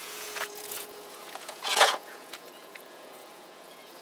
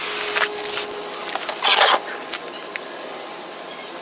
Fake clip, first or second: first